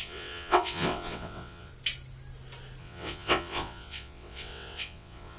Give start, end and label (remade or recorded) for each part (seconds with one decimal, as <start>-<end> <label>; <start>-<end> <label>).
0.0-1.7 remade; 1.7-2.8 recorded; 2.8-5.4 remade